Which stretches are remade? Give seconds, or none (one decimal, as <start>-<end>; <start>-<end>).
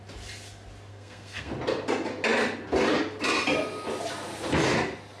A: 0.9-1.5